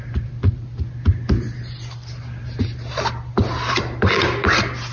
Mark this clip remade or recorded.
recorded